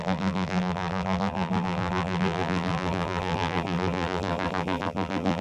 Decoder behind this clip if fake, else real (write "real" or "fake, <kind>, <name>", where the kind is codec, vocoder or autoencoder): fake, vocoder, BigVGAN v2